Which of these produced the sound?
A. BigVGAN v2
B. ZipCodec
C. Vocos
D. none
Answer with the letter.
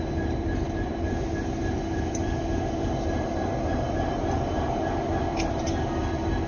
A